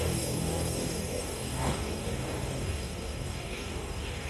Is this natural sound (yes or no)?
no